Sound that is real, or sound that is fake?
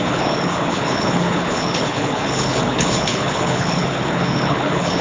fake